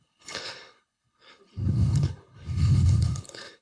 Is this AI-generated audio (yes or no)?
yes